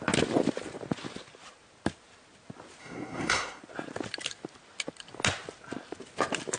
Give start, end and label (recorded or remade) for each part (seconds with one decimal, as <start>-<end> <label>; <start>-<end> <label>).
0.0-2.8 recorded; 2.8-3.6 remade; 3.6-6.6 recorded